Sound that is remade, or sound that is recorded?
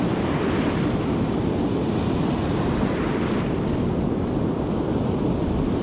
recorded